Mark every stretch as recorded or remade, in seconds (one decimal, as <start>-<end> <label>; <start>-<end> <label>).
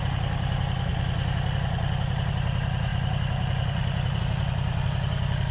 0.0-0.9 remade; 0.9-2.3 recorded; 2.3-5.5 remade